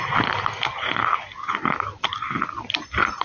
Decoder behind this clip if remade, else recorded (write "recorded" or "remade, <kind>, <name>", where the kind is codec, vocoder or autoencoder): recorded